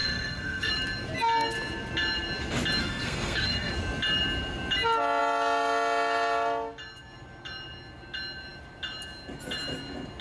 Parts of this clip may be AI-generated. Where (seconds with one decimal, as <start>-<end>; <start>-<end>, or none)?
0.0-0.7; 2.8-3.7